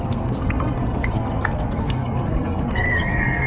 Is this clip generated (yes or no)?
yes